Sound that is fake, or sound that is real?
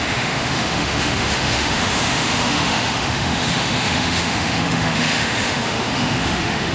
fake